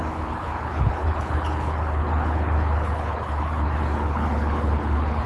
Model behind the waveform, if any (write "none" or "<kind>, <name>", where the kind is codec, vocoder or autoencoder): codec, HILCodec